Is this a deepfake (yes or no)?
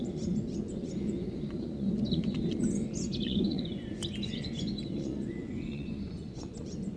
yes